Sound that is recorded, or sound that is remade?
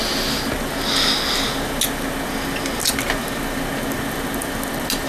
recorded